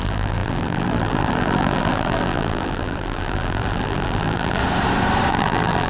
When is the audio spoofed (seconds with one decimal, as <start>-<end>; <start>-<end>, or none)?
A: 0.0-4.6; 5.3-5.9